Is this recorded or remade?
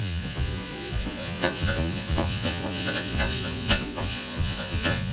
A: remade